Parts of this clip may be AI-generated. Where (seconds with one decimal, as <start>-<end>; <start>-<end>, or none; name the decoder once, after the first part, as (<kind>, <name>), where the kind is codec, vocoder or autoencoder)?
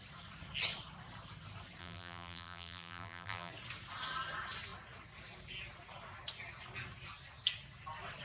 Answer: 1.8-3.5 (vocoder, BigVGAN v2)